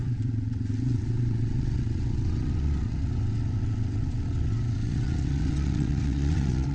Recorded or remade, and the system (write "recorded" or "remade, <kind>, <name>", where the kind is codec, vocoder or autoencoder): remade, vocoder, WaveNeXt